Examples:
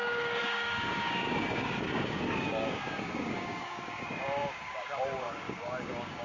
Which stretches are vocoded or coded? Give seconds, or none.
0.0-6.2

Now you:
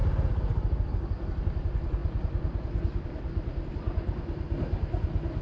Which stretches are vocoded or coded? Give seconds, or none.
none

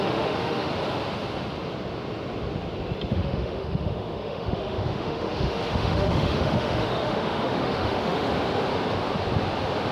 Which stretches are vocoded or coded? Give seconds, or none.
0.0-0.7; 3.1-8.3

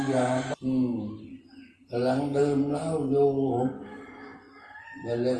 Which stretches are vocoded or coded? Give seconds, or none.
none

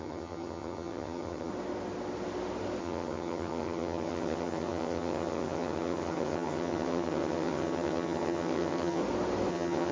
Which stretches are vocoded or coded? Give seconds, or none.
0.0-1.5; 2.8-9.0; 9.5-9.9

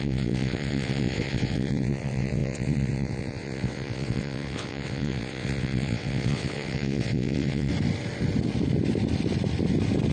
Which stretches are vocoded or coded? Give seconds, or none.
0.0-7.7

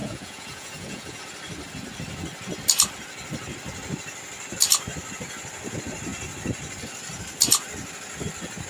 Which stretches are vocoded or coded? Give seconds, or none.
0.0-1.2

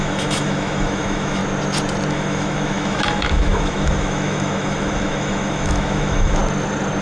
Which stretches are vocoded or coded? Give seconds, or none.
0.0-1.4; 2.1-6.4